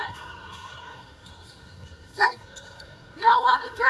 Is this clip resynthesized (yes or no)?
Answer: yes